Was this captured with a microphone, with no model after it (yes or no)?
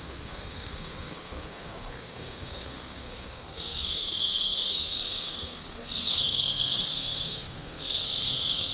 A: no